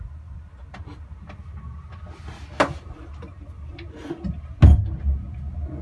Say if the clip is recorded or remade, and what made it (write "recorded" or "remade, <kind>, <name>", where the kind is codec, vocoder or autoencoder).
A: recorded